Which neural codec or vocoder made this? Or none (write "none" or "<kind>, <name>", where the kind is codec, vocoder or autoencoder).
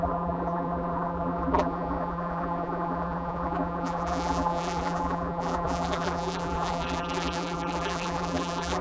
vocoder, BigVGAN v2